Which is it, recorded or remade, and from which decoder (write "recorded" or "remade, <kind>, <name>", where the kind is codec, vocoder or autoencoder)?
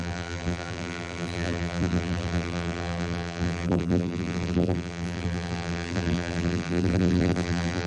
remade, vocoder, BigVGAN v2